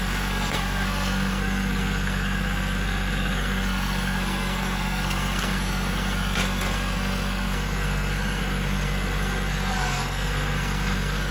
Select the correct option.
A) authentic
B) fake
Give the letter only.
B